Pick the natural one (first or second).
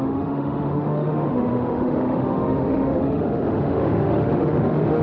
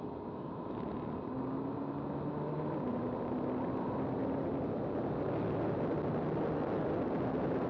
second